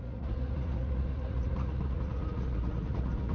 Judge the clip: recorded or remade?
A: remade